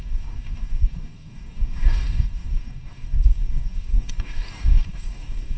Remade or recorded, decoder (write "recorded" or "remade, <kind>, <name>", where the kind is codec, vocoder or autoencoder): remade, codec, DAC